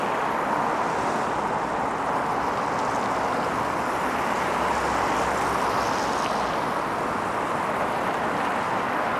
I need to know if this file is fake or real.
real